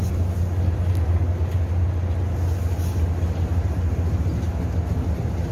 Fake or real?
real